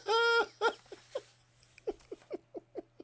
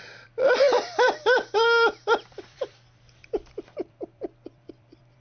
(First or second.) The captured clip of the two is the first